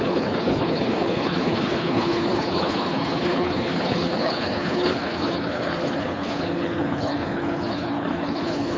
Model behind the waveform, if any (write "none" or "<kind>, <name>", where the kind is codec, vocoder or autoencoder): codec, HILCodec